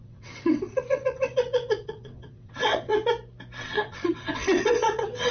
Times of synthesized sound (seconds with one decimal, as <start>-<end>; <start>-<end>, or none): 0.0-2.9; 3.6-5.3